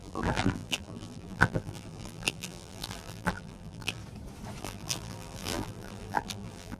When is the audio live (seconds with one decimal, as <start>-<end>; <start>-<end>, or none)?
4.0-4.6